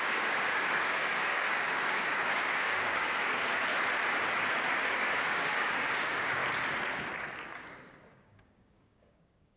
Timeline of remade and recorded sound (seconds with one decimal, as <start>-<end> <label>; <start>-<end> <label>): 0.0-3.5 remade; 3.5-4.8 recorded; 4.8-6.4 remade; 6.4-8.1 recorded; 8.1-9.6 remade